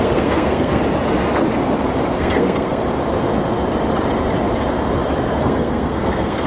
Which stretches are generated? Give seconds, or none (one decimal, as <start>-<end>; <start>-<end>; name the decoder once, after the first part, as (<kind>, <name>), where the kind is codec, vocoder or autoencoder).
0.0-0.8 (codec, SNAC); 2.2-2.8; 5.4-6.5